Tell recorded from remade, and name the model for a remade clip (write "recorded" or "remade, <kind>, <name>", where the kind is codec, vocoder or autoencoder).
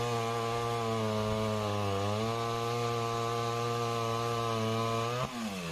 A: recorded